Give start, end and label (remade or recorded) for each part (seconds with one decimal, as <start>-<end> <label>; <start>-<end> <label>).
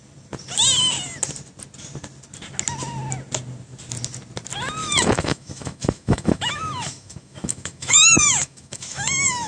0.0-4.8 recorded; 4.8-9.5 remade